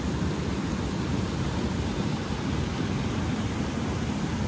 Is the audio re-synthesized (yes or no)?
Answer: no